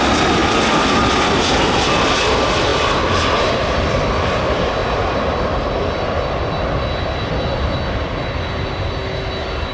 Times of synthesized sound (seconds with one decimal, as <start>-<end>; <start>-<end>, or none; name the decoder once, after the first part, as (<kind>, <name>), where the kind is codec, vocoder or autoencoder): 0.4-1.2 (vocoder, BigVGAN v2); 2.7-3.5

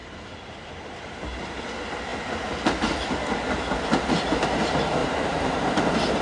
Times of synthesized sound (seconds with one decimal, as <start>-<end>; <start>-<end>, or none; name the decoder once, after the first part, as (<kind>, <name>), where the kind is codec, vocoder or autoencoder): 0.0-1.6 (vocoder, BigVGAN v2); 5.0-5.7

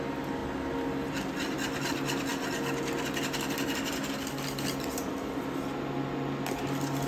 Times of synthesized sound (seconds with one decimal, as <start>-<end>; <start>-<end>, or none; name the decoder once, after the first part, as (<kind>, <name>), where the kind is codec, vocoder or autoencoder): none

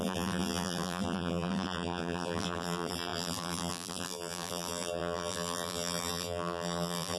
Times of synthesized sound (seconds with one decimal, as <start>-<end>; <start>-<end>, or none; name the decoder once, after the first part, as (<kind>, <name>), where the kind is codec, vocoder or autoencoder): 0.0-7.2 (vocoder, BigVGAN v2)

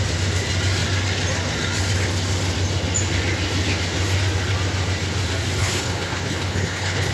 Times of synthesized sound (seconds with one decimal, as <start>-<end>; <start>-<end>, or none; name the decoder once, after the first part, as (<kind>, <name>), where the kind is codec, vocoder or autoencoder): 5.6-7.1 (codec, HILCodec)